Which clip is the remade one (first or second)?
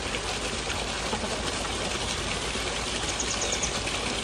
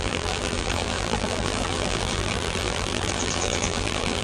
second